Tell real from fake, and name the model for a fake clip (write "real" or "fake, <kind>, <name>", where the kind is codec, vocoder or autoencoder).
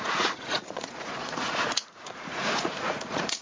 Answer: fake, vocoder, Vocos